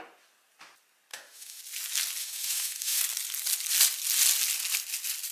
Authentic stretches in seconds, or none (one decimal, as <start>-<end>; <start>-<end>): 0.0-1.1; 1.6-2.2; 3.0-5.3